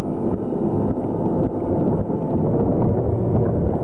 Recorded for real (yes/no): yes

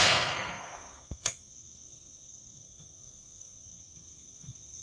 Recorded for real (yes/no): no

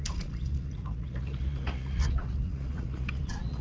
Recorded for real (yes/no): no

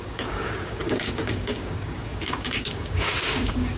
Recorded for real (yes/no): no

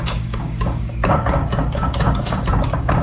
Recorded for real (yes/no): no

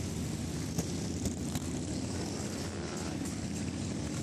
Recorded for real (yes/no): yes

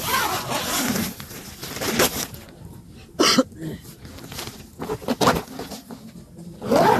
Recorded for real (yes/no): yes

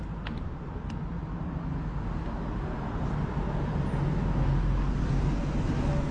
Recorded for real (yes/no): yes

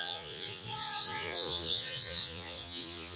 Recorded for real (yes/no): no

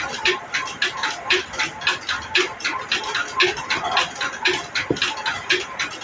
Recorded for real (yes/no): yes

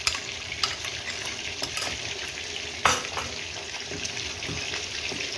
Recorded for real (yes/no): no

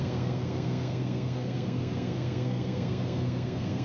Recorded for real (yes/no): no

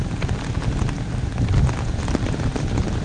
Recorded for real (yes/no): yes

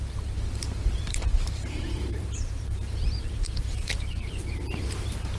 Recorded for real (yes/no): no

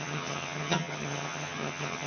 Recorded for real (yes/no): no